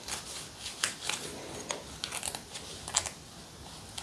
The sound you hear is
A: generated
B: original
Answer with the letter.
B